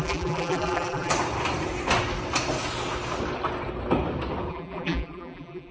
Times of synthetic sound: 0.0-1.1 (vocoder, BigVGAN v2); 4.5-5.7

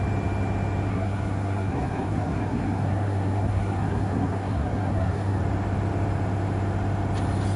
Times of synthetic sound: 0.9-5.4 (codec, SNAC)

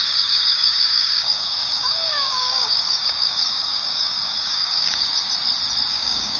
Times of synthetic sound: 0.0-5.1 (codec, DAC); 5.9-6.4

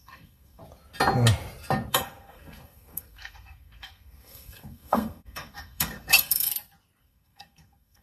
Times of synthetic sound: 0.0-0.6 (codec, SNAC); 1.9-6.5; 7.0-8.0